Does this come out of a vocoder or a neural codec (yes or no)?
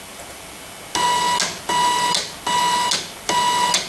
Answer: no